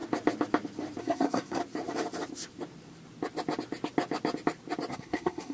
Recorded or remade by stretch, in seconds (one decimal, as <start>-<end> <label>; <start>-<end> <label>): 0.0-1.0 recorded; 1.0-1.6 remade; 1.6-4.9 recorded; 4.9-5.5 remade

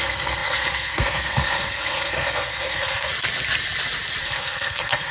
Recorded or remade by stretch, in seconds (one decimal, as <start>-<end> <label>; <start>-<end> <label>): 0.0-3.1 remade; 3.1-4.2 recorded; 4.2-5.1 remade

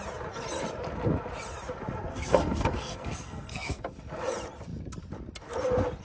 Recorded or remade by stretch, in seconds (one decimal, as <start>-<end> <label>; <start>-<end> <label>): 0.0-2.1 recorded; 2.1-3.8 remade; 3.8-6.0 recorded

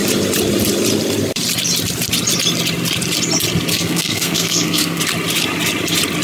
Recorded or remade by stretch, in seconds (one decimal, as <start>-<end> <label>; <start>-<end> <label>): 0.0-3.7 recorded; 3.7-5.0 remade; 5.0-6.2 recorded

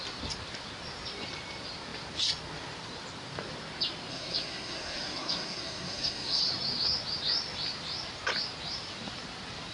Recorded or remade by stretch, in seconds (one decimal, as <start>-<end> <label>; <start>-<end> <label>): 0.0-4.1 recorded; 4.1-6.4 remade; 6.4-9.7 recorded

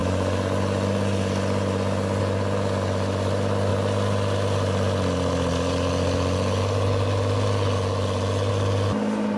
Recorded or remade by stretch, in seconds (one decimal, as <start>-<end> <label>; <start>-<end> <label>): 0.0-9.4 recorded

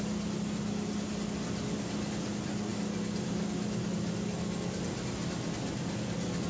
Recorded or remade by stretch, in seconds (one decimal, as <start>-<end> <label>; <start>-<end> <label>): 0.0-6.5 recorded